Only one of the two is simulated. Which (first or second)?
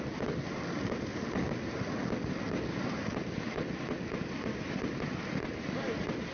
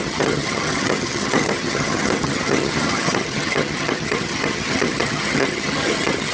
second